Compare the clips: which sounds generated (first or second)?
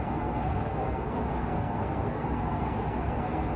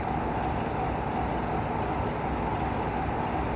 first